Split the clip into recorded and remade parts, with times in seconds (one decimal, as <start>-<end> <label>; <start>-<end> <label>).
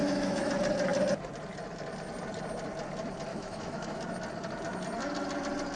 0.0-0.5 remade; 0.5-3.3 recorded; 3.3-4.0 remade; 4.0-5.8 recorded